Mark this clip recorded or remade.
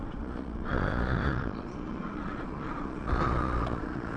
remade